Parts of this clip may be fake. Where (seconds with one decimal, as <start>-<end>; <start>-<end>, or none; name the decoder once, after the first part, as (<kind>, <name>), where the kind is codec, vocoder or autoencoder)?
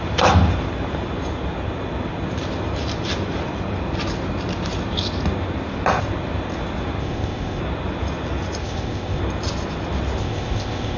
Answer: 7.0-7.6 (codec, ZipCodec); 8.6-9.2; 10.2-11.0